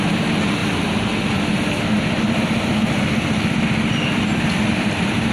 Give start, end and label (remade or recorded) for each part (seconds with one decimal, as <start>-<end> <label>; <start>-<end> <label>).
0.0-5.3 recorded